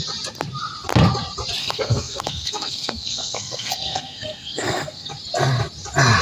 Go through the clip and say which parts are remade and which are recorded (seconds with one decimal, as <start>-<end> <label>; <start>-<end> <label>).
0.0-1.6 recorded; 1.6-5.1 remade; 5.1-6.2 recorded